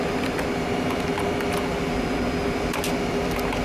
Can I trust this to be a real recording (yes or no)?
yes